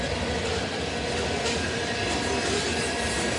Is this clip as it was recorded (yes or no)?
yes